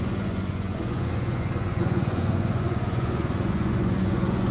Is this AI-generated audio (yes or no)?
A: yes